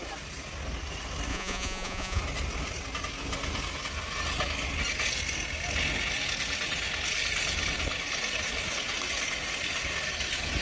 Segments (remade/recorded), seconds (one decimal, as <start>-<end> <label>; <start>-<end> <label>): 0.0-1.3 recorded; 1.3-2.2 remade; 2.2-10.6 recorded